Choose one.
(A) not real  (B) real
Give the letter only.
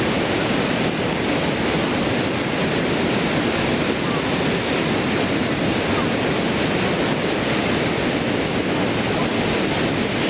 B